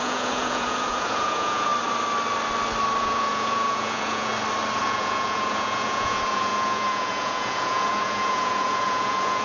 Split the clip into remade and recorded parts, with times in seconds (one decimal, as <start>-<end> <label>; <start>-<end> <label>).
0.0-1.7 remade; 1.7-3.0 recorded; 3.0-4.3 remade; 4.3-4.8 recorded; 4.8-9.4 remade